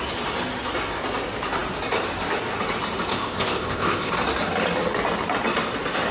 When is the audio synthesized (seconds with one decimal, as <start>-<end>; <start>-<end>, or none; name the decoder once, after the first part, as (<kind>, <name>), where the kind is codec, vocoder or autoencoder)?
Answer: 3.1-4.1 (codec, ZipCodec)